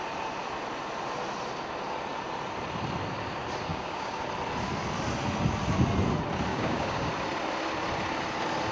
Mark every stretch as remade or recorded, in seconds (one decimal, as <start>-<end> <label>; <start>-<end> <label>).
0.0-3.7 recorded; 3.7-4.2 remade; 4.2-6.5 recorded; 6.5-7.1 remade; 7.1-8.7 recorded